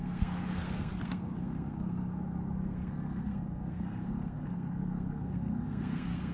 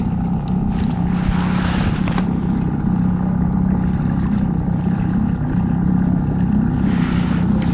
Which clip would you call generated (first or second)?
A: first